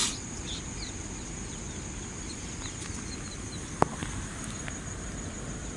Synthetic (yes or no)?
no